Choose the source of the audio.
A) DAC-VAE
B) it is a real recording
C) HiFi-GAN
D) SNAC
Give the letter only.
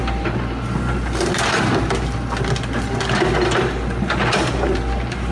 B